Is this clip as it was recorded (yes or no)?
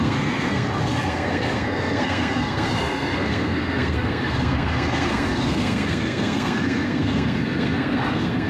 no